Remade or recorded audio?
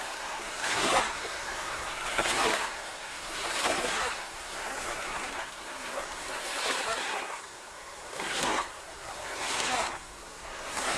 remade